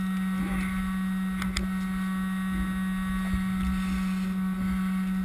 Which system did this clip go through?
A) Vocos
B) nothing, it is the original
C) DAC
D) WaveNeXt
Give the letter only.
B